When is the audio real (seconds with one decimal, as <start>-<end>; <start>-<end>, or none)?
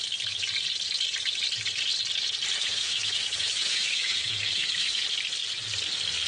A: 0.0-2.6; 5.0-6.3